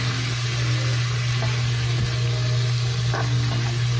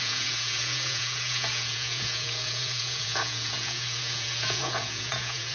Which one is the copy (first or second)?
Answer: second